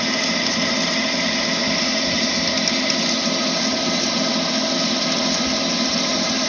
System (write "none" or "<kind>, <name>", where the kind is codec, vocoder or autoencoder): none